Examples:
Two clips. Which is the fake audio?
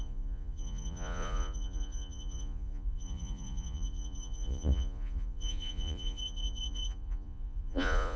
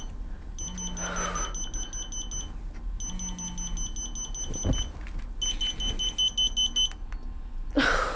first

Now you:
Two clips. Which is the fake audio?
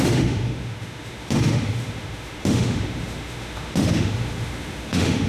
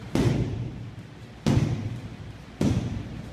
first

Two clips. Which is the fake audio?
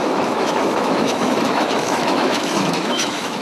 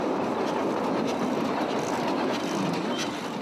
first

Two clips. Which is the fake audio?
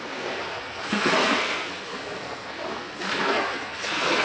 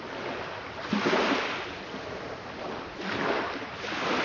first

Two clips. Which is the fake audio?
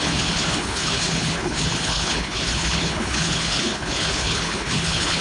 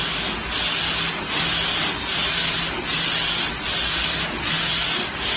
first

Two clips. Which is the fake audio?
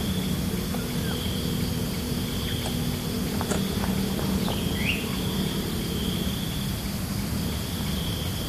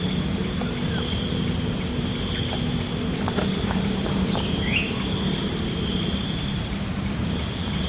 second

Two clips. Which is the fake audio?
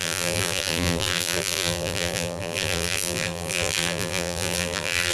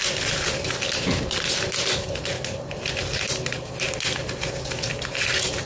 first